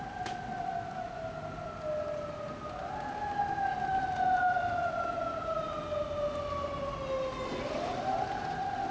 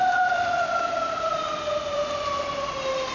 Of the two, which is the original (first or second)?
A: first